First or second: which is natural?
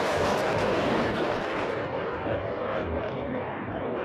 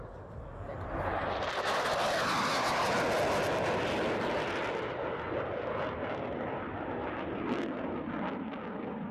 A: second